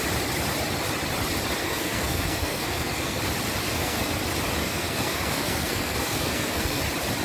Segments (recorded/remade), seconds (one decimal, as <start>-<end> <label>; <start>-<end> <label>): 0.0-1.6 recorded; 1.6-3.2 remade; 3.2-3.6 recorded; 3.6-4.1 remade; 4.1-4.6 recorded; 4.6-6.8 remade; 6.8-7.2 recorded